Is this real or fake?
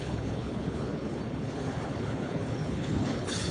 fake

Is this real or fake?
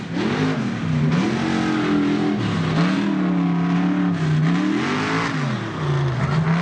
real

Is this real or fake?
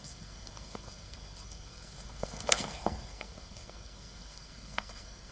fake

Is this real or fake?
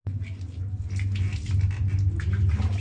real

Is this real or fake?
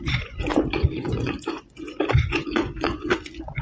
fake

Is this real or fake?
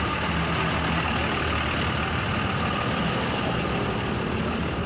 real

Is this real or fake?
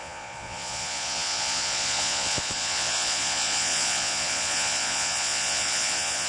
fake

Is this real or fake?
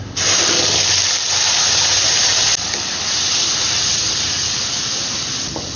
real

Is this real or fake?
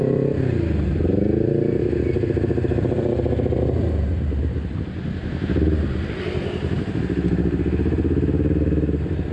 real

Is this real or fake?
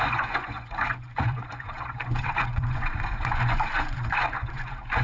fake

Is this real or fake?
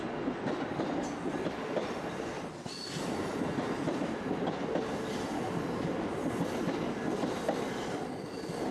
real